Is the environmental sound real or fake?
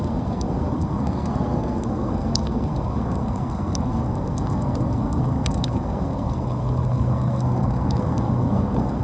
fake